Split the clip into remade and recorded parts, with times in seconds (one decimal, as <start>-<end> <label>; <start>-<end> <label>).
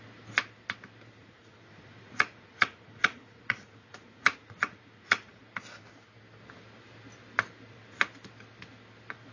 0.0-1.2 recorded; 1.2-5.4 remade; 5.4-9.3 recorded